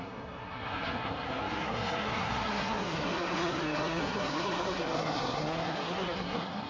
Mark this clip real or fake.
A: fake